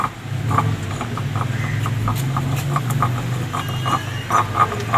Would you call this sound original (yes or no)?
yes